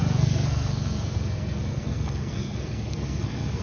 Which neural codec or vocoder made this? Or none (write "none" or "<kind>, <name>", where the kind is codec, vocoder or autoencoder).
codec, SNAC